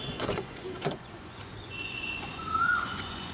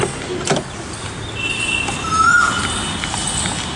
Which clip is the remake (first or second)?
first